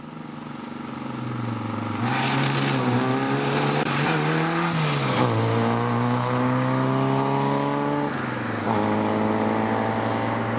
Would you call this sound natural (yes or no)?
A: yes